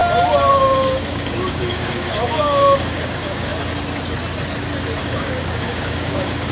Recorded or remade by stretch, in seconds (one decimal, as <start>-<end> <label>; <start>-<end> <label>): 0.0-0.5 recorded; 0.5-3.5 remade; 3.5-5.0 recorded; 5.0-6.5 remade